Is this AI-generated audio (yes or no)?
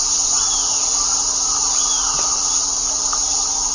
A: no